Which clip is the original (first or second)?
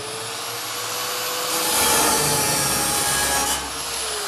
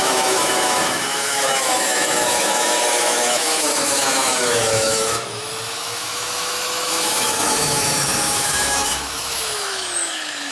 first